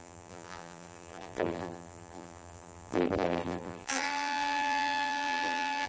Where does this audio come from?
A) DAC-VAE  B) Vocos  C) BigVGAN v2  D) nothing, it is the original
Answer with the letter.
C